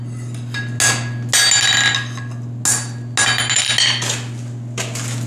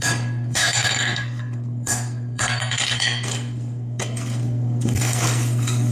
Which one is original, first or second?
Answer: first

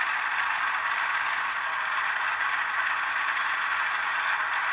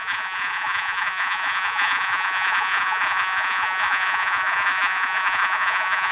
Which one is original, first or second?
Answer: first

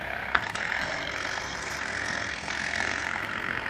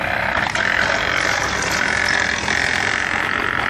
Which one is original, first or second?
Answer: second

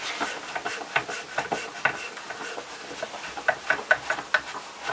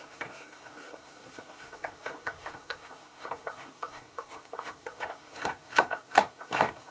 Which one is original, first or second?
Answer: first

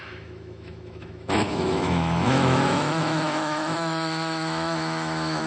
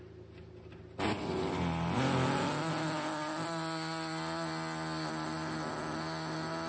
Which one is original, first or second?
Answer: second